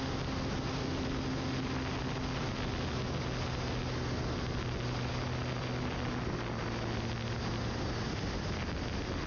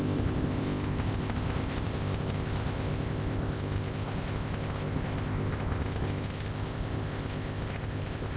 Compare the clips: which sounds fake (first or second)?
second